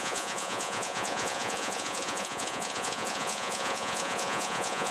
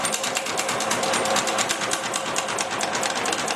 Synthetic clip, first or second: first